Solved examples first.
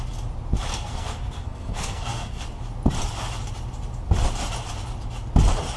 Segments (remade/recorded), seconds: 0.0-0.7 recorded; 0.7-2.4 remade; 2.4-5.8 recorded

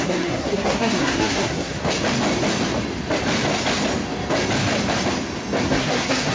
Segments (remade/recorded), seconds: 0.0-1.8 remade; 1.8-5.6 recorded; 5.6-6.3 remade

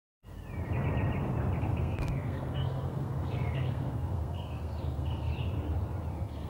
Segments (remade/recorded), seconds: 0.0-1.6 recorded; 1.6-5.3 remade; 5.3-6.1 recorded; 6.1-6.5 remade